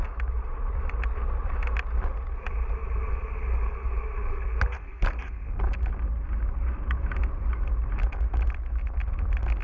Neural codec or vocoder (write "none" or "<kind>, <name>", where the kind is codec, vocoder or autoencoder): none